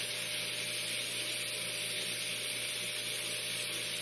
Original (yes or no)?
yes